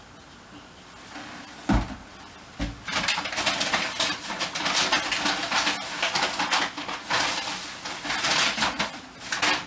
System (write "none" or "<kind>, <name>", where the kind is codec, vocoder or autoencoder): none